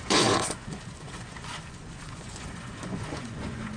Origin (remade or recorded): remade